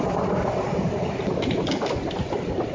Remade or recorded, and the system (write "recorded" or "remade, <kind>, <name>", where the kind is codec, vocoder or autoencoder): recorded